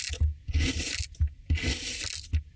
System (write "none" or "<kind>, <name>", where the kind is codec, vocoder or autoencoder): none